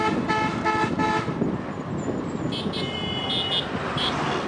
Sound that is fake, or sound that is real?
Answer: real